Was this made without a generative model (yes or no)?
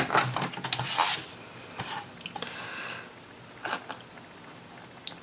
yes